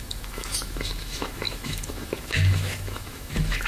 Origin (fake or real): fake